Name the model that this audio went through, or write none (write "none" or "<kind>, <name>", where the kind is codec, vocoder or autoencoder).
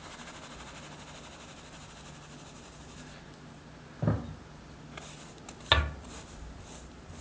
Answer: none